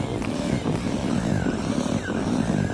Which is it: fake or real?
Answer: fake